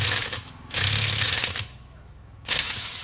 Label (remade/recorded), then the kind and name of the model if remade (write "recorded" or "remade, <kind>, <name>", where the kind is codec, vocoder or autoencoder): remade, autoencoder, DAC-VAE